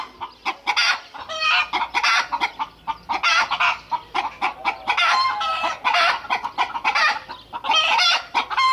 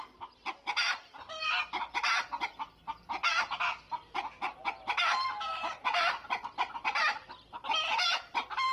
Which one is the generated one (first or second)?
second